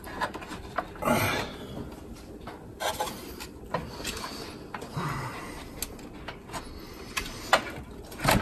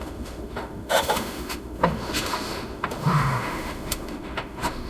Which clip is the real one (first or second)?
first